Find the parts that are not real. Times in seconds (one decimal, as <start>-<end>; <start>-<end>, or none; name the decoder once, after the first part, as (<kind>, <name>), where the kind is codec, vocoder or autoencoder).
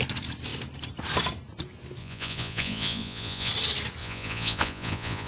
2.0-3.5 (vocoder, Vocos); 4.0-5.3